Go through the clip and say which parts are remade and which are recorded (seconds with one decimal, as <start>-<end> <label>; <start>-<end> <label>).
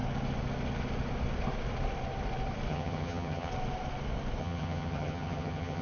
0.0-2.7 recorded; 2.7-3.5 remade; 3.5-4.4 recorded; 4.4-5.8 remade